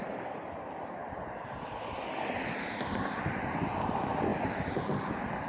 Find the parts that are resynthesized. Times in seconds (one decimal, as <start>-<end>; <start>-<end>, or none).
4.3-4.8